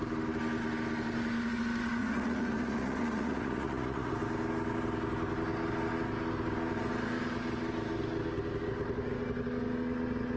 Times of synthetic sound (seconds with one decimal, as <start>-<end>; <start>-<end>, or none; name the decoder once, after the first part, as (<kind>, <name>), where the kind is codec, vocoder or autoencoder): 2.0-4.1 (vocoder, Vocos)